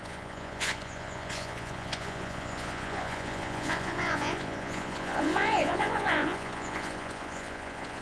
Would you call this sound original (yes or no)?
no